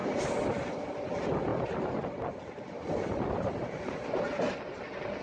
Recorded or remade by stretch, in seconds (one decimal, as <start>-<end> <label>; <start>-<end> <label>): 0.0-5.2 recorded